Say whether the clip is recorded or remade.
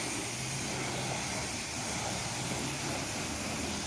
recorded